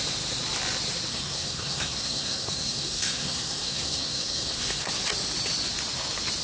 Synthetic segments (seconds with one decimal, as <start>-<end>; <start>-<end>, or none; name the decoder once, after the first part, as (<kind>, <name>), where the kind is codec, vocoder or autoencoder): 1.1-4.9 (codec, SNAC)